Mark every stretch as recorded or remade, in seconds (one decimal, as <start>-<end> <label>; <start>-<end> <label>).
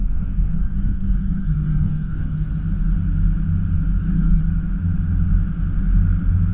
0.0-2.5 remade; 2.5-4.0 recorded; 4.0-4.4 remade; 4.4-6.5 recorded